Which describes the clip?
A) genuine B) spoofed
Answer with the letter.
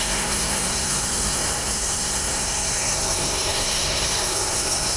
B